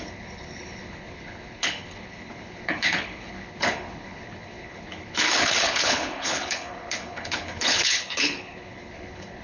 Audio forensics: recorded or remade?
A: remade